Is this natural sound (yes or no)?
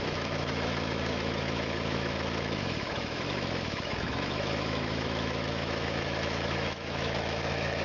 no